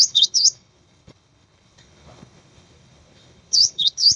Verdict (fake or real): fake